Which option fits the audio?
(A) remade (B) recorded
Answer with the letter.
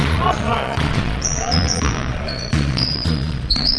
A